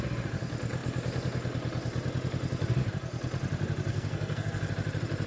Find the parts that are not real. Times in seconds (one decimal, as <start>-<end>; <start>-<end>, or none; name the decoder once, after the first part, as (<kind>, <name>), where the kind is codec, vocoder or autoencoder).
3.9-4.7 (codec, SNAC)